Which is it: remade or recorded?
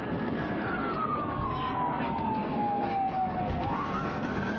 remade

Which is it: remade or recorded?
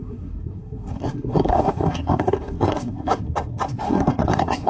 remade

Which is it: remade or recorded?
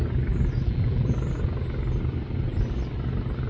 recorded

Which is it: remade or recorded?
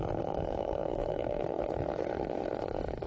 remade